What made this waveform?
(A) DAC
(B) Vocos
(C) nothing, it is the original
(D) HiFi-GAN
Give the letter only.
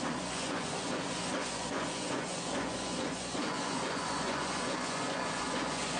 B